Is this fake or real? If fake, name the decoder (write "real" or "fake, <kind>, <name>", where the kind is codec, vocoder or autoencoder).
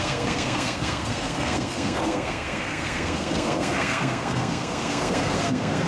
fake, codec, SNAC